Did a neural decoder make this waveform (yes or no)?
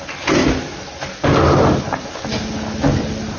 no